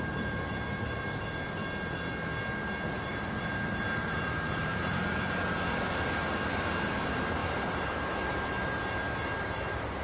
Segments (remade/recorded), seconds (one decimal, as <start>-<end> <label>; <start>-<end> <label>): 0.0-1.6 remade; 1.6-2.9 recorded; 2.9-10.0 remade